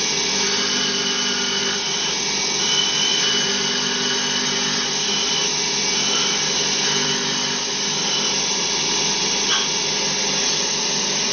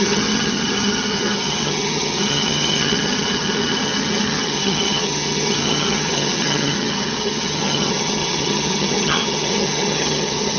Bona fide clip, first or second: first